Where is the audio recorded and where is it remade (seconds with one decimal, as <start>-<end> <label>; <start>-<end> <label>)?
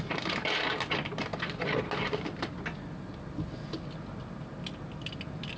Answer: 0.0-5.6 recorded